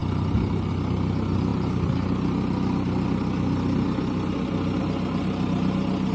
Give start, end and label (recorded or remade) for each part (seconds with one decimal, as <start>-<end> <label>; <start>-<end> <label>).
0.0-6.1 recorded